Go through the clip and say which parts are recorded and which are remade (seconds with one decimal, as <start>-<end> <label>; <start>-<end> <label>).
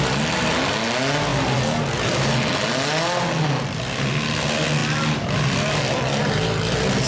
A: 0.0-7.1 recorded